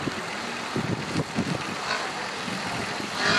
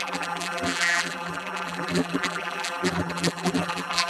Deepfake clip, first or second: second